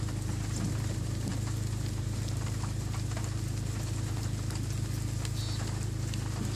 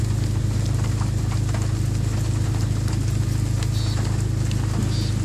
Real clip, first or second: second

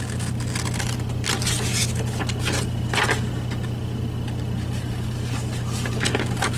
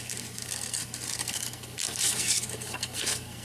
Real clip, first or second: first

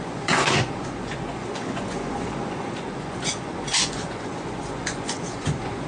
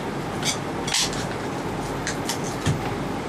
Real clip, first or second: second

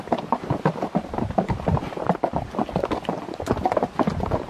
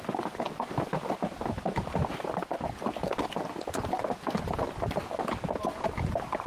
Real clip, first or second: second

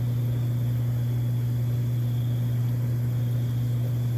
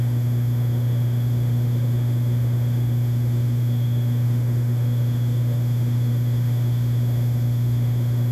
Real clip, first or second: first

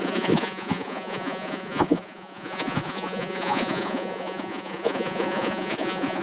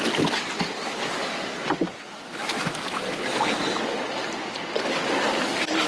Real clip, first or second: second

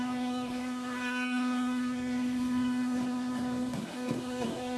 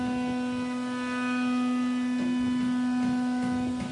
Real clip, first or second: second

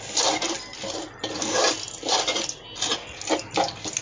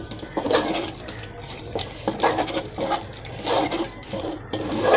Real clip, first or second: first